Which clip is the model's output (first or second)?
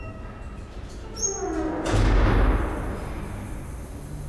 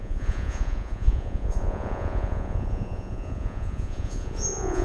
second